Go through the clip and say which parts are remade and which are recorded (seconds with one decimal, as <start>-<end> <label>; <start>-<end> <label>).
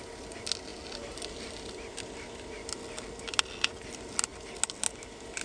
0.0-5.4 recorded